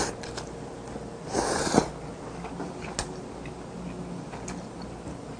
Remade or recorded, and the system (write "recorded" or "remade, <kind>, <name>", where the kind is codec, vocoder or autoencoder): recorded